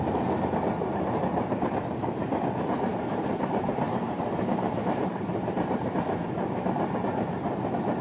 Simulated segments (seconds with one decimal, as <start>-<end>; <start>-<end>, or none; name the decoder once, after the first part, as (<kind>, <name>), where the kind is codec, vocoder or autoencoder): 2.9-7.1 (vocoder, BigVGAN v2)